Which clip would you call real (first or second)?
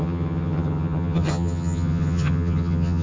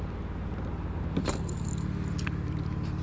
second